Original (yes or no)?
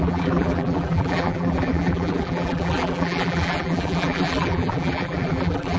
no